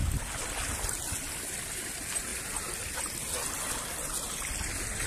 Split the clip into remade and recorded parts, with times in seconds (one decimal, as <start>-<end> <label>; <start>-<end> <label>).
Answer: 0.0-5.1 recorded